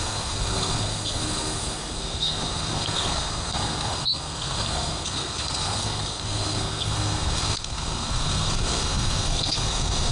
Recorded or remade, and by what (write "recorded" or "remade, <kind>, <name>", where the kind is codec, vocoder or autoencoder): remade, codec, SNAC